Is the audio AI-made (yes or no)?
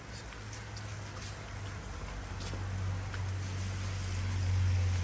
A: no